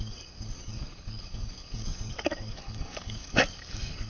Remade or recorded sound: remade